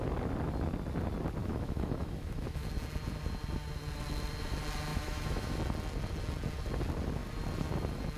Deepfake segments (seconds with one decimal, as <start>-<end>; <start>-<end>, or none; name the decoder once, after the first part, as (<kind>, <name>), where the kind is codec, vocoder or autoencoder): 1.4-2.7 (autoencoder, DAC-VAE); 4.9-5.6